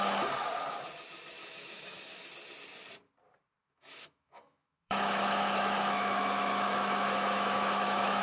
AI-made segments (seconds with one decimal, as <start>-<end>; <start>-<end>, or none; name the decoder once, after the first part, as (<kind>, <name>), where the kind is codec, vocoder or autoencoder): 1.4-2.3 (autoencoder, DAC-VAE); 3.6-8.2